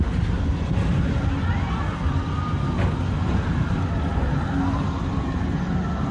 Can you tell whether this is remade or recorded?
recorded